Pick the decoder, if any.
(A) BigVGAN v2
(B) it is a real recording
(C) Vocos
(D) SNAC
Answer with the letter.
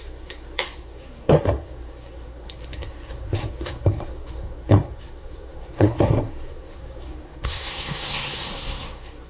D